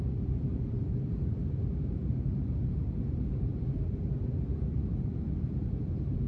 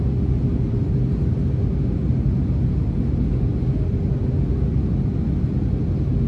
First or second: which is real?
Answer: second